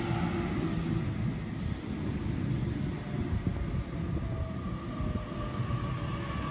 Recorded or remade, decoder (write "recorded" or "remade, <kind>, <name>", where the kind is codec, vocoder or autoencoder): recorded